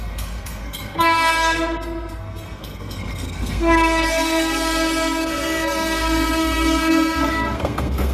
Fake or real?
fake